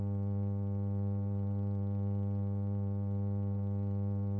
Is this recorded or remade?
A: remade